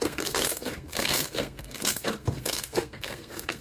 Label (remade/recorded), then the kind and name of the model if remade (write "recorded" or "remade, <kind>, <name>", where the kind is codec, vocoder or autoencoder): remade, codec, SNAC